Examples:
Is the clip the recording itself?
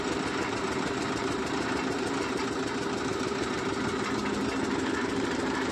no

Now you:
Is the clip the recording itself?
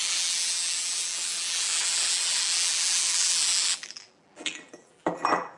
no